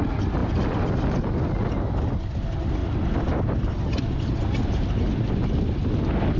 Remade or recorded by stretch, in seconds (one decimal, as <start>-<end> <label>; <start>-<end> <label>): 0.0-6.4 recorded